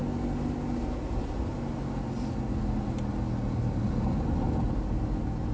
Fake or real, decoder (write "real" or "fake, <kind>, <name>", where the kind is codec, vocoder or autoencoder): real